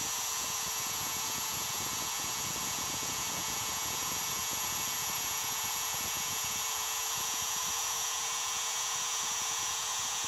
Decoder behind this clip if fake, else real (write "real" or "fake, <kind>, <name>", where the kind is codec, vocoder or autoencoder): fake, vocoder, Vocos